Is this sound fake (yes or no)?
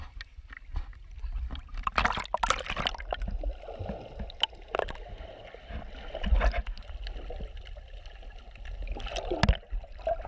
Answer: no